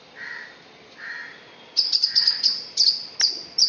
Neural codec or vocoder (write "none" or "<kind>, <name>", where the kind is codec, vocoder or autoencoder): none